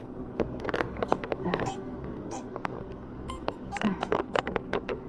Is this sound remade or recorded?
remade